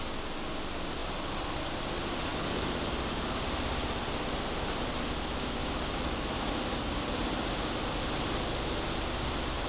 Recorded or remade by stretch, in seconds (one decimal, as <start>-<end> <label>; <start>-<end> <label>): 0.0-1.0 recorded; 1.0-1.6 remade; 1.6-2.3 recorded; 2.3-2.9 remade; 2.9-5.6 recorded; 5.6-7.7 remade; 7.7-9.7 recorded